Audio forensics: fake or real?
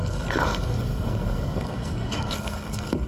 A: fake